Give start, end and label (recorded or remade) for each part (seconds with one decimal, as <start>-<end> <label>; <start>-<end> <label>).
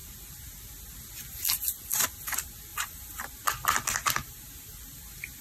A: 0.0-2.7 recorded; 2.7-3.2 remade; 3.2-5.4 recorded